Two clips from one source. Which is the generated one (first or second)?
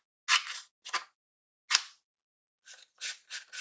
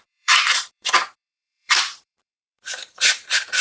second